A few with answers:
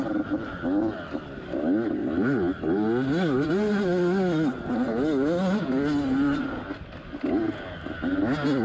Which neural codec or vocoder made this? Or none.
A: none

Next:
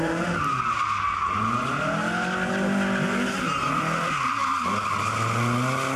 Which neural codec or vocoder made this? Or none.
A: none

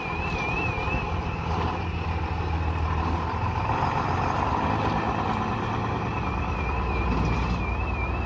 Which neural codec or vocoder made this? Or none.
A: none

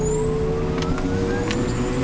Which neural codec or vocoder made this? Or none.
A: none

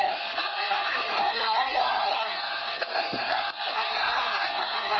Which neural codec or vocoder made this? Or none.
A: codec, SNAC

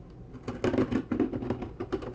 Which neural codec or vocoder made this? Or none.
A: none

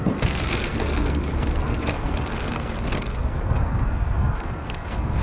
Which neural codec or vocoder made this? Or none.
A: codec, SNAC